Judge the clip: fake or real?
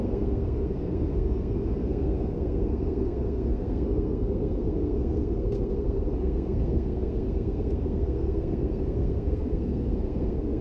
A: fake